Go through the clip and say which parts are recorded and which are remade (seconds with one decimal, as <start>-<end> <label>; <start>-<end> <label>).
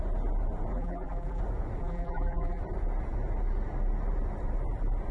0.0-0.7 recorded; 0.7-1.4 remade; 1.4-1.8 recorded; 1.8-2.6 remade; 2.6-5.1 recorded